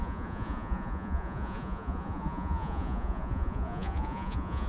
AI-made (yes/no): yes